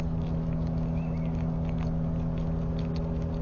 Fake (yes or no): no